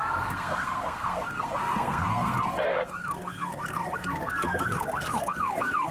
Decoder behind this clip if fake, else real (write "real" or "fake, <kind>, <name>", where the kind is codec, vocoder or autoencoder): fake, codec, SNAC